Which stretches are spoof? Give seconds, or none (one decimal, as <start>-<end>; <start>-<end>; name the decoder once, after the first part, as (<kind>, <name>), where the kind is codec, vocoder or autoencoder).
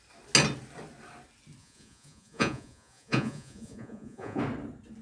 1.6-4.4 (vocoder, Vocos)